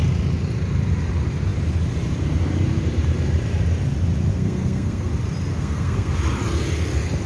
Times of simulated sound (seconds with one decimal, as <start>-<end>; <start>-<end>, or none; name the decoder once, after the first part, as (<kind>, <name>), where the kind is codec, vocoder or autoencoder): 4.3-5.1 (codec, SNAC); 5.5-6.1